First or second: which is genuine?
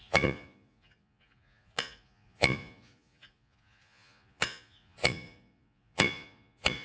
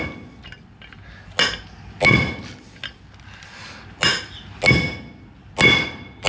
second